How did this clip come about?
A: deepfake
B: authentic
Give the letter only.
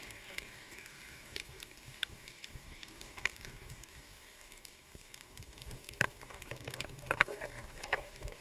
A